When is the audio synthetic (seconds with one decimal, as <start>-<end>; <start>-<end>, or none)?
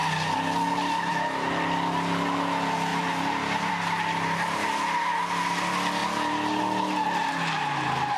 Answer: 2.9-3.7